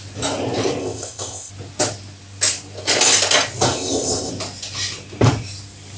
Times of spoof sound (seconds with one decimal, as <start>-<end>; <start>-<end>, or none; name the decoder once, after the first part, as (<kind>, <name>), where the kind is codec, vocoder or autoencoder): 0.8-1.5 (codec, ZipCodec); 3.7-4.3